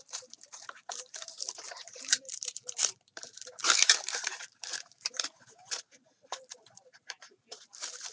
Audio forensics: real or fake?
fake